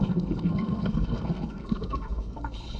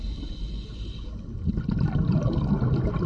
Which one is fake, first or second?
first